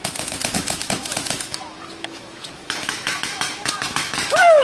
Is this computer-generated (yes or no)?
yes